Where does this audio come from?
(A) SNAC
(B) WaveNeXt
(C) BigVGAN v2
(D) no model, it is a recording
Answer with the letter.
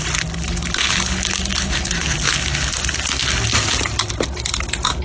D